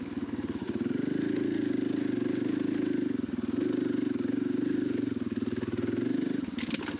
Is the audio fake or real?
real